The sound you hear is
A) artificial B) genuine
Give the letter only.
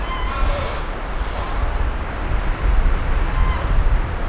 B